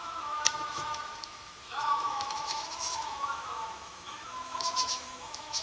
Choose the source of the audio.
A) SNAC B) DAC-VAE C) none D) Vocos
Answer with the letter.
B